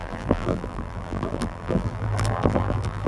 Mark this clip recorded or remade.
remade